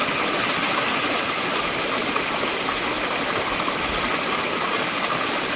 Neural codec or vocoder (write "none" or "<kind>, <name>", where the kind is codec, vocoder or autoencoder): none